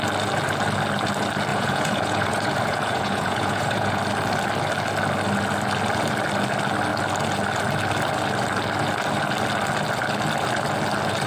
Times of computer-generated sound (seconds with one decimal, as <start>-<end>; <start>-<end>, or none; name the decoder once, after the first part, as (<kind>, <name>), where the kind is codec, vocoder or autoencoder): 1.5-4.0 (vocoder, Vocos)